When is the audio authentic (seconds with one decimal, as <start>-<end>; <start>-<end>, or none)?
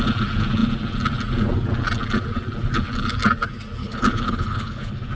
0.0-3.8